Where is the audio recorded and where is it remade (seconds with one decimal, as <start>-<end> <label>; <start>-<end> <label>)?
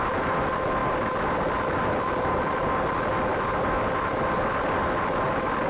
0.0-5.7 recorded